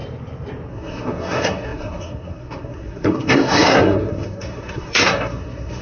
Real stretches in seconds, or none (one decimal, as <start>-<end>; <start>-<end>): 0.0-0.7

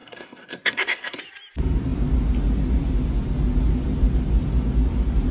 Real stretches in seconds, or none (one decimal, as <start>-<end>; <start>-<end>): 1.2-5.3

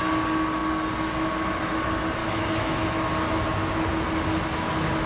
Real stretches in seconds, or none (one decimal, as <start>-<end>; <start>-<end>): 0.0-2.2; 3.1-5.1

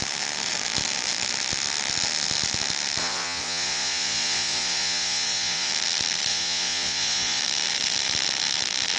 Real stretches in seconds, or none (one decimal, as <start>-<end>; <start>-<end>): 0.0-3.0; 5.7-6.3; 7.4-9.0

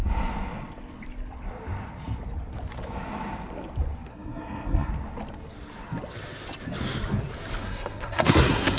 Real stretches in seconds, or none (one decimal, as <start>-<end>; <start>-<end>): 0.0-4.1; 4.9-7.6

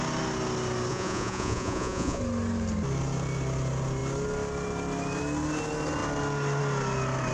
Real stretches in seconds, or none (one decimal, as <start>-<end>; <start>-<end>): 0.0-0.9; 2.2-7.3